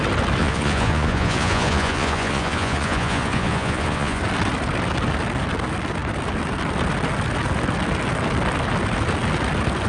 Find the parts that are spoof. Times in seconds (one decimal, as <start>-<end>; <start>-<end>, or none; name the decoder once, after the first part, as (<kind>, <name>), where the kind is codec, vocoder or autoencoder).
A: 0.4-4.2 (vocoder, Vocos)